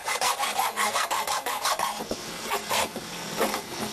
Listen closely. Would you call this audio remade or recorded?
remade